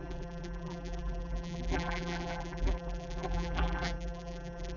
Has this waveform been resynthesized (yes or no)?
yes